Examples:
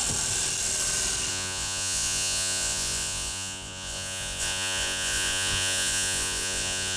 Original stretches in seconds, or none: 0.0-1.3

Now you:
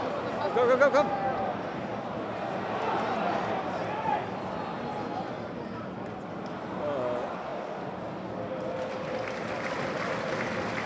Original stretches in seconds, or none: 0.0-10.9

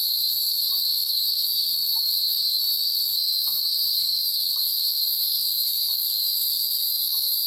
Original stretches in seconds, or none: none

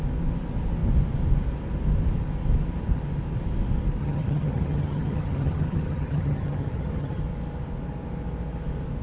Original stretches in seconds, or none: 0.0-4.0; 7.2-9.0

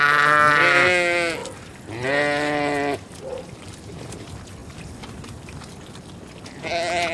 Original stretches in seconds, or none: 0.0-7.1

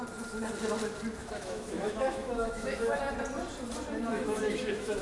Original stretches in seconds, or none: 0.0-1.2; 3.0-4.1

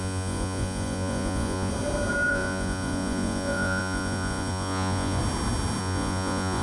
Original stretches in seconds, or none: 1.7-2.3; 5.2-5.8

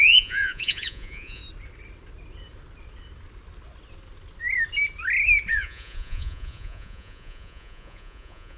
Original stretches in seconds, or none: 1.4-5.5